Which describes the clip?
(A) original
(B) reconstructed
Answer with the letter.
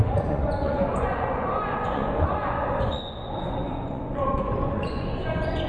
B